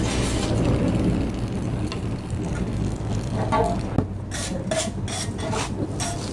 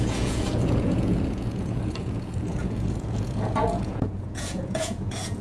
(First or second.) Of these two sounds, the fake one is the second